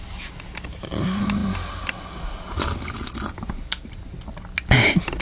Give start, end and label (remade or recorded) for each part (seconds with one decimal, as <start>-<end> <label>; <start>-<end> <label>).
0.0-5.2 recorded